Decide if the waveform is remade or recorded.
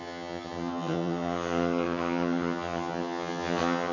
remade